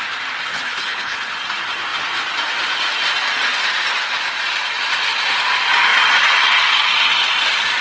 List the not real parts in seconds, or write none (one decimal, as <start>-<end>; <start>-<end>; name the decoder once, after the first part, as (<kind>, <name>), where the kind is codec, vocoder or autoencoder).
0.5-1.2 (codec, HILCodec)